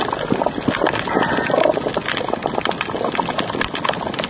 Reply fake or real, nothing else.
real